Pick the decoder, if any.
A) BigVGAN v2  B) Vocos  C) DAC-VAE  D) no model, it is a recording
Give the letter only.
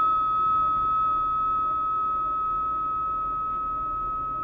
D